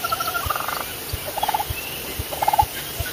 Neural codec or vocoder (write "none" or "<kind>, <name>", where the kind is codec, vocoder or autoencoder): none